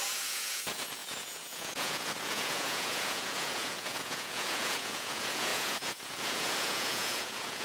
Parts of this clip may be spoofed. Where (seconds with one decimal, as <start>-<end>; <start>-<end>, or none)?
0.0-7.6